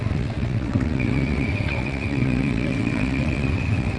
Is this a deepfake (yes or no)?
yes